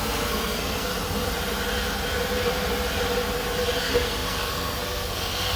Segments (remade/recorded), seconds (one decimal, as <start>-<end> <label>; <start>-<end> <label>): 0.0-0.9 remade; 0.9-3.8 recorded; 3.8-5.6 remade